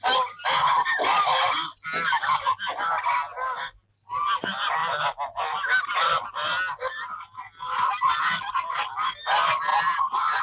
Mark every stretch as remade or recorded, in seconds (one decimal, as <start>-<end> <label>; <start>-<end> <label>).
0.0-10.4 recorded